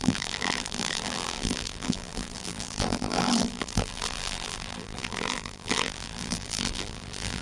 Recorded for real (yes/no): no